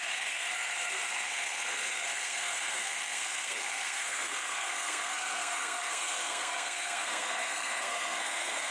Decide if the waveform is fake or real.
fake